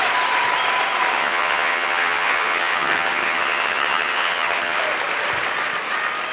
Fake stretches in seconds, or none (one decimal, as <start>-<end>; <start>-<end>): 1.1-4.8